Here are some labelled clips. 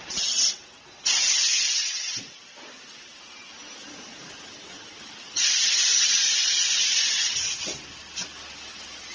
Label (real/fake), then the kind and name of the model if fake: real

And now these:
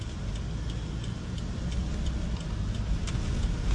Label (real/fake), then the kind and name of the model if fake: real